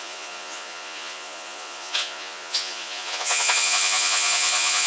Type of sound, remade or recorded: remade